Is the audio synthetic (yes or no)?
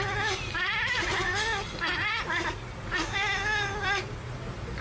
no